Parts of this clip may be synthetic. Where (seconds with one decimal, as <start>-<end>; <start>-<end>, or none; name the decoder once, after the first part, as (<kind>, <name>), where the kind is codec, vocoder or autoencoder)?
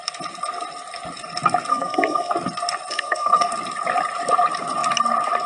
1.7-2.3 (codec, SNAC); 2.9-3.5